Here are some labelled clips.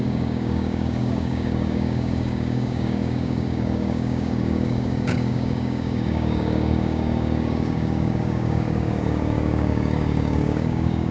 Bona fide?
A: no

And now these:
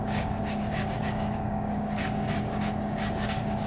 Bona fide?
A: no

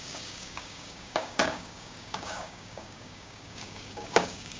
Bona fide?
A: no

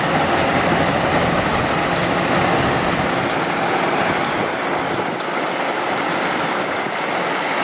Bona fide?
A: yes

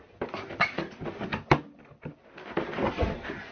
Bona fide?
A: yes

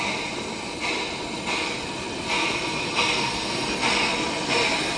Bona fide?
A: yes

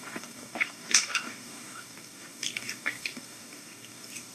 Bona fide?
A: no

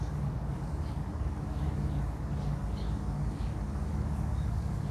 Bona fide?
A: no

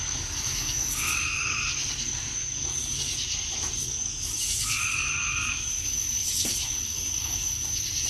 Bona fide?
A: no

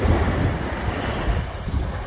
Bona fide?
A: yes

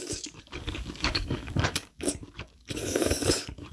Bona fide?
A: no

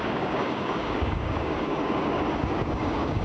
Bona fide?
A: no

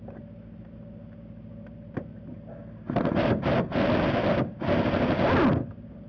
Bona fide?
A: yes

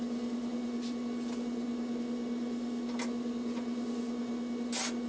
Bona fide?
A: yes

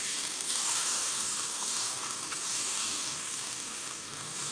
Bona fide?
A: no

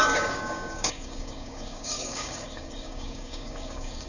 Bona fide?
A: no